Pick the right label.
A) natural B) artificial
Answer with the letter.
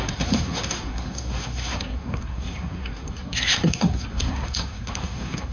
B